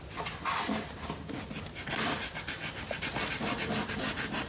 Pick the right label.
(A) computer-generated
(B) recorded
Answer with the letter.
B